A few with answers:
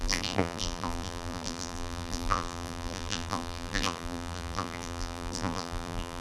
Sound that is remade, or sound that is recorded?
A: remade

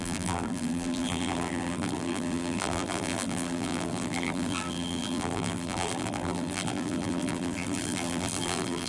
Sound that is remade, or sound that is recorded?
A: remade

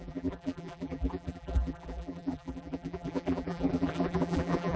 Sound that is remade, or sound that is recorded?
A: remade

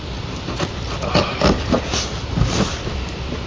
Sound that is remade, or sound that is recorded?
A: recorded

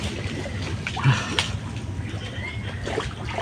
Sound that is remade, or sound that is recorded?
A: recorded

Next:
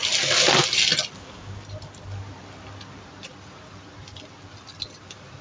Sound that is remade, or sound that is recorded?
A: recorded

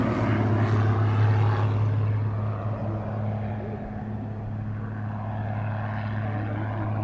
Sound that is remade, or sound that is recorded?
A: recorded